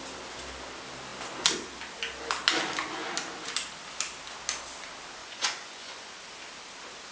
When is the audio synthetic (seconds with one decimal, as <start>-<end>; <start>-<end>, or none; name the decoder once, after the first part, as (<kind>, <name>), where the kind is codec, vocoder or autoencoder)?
5.2-6.1 (vocoder, Vocos)